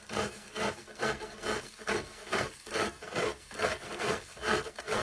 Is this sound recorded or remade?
remade